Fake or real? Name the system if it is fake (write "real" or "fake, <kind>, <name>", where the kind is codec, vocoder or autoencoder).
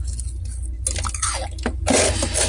real